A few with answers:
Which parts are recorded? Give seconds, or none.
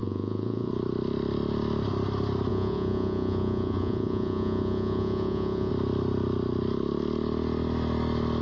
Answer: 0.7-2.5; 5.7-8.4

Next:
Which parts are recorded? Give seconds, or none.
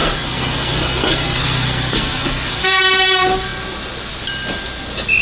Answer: 2.8-5.2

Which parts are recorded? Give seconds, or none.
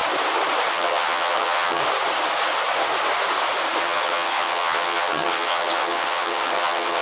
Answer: 0.0-0.7; 1.8-3.8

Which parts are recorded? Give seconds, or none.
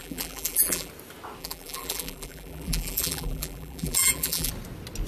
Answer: 0.9-1.4; 4.5-5.1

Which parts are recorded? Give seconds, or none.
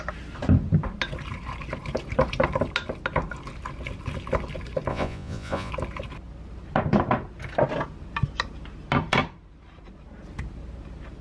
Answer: 0.0-4.9; 5.7-11.2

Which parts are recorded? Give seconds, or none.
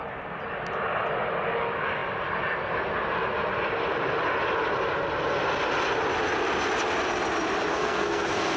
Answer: 0.0-7.7